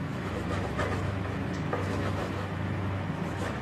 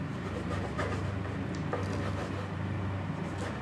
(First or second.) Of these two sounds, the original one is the second